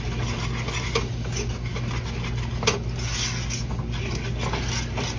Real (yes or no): yes